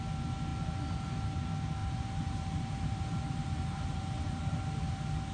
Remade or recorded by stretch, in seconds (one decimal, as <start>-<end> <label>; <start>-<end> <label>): 0.0-1.8 recorded; 1.8-4.4 remade; 4.4-5.3 recorded